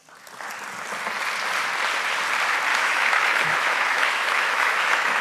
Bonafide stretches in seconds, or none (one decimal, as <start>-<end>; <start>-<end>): 0.0-2.7